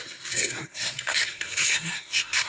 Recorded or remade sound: remade